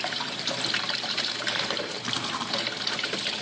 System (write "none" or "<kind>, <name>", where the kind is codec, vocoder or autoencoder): vocoder, BigVGAN v2